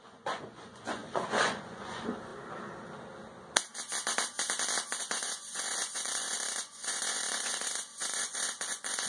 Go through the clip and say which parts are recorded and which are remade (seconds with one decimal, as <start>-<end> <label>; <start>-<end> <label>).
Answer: 0.0-2.3 remade; 2.3-5.0 recorded; 5.0-9.1 remade

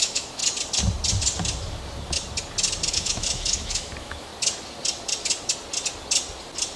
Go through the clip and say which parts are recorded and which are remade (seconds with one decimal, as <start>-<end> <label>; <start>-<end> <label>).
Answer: 0.0-0.4 remade; 0.4-2.9 recorded; 2.9-4.3 remade; 4.3-6.8 recorded

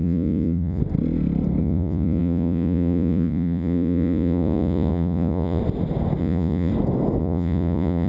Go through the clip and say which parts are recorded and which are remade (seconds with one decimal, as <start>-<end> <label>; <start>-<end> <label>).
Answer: 0.0-0.8 remade; 0.8-1.6 recorded; 1.6-5.6 remade; 5.6-6.2 recorded; 6.2-6.7 remade; 6.7-7.2 recorded; 7.2-8.1 remade

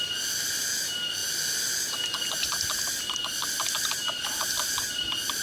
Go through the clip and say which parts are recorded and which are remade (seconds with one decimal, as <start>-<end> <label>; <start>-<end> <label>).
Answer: 0.0-5.4 recorded

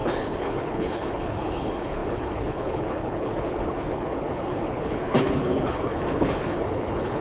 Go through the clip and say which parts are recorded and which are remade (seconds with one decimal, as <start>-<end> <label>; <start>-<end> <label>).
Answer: 0.0-7.2 remade

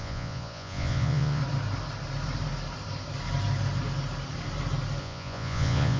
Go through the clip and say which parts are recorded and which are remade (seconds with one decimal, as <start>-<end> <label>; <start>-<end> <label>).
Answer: 0.0-1.4 remade; 1.4-5.0 recorded; 5.0-6.0 remade